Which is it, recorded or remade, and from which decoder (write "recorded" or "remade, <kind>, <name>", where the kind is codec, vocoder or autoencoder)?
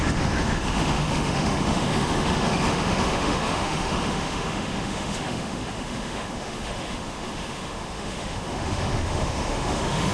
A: remade, autoencoder, DAC-VAE